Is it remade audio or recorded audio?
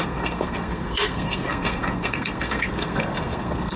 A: remade